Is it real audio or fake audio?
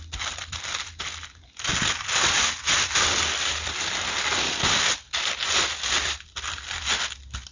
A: real